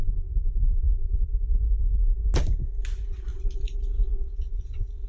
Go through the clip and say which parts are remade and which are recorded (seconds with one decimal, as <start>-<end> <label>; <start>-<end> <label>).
0.0-5.1 recorded